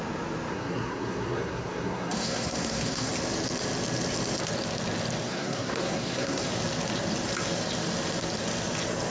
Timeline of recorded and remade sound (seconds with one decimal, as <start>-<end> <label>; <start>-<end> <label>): 0.0-0.5 recorded; 0.5-3.1 remade; 3.1-5.2 recorded; 5.2-6.5 remade; 6.5-9.1 recorded